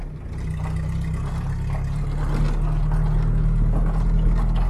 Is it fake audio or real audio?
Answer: real